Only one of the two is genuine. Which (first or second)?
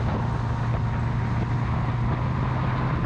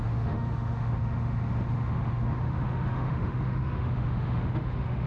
first